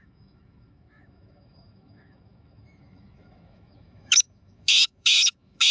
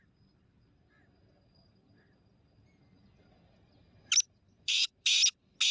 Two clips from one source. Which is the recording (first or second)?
second